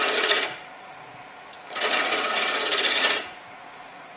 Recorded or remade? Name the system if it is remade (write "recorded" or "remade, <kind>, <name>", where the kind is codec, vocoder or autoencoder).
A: remade, vocoder, Vocos